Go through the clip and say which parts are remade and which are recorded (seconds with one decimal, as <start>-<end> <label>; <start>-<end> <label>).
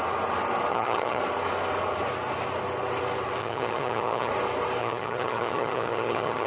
0.0-0.7 recorded; 0.7-1.2 remade; 1.2-3.4 recorded; 3.4-4.3 remade; 4.3-4.8 recorded; 4.8-6.5 remade